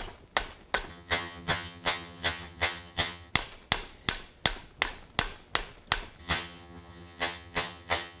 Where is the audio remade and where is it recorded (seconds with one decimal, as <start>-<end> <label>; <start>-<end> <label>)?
0.0-0.9 recorded; 0.9-3.3 remade; 3.3-6.2 recorded; 6.2-8.2 remade